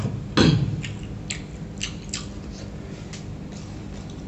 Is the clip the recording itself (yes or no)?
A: yes